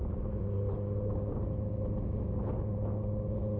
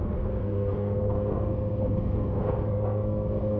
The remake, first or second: second